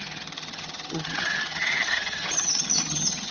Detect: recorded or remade remade